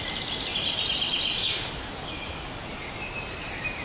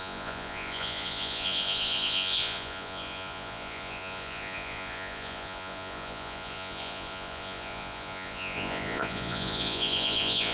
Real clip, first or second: first